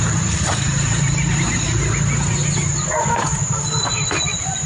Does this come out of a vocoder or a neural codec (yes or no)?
no